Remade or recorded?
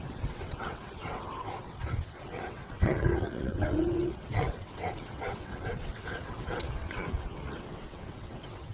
remade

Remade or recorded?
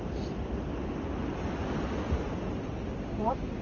recorded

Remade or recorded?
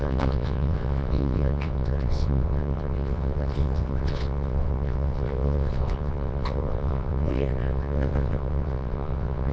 remade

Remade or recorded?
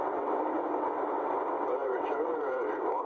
remade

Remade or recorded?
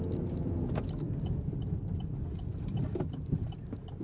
recorded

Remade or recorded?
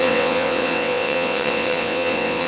remade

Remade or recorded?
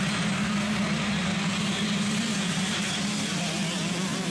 recorded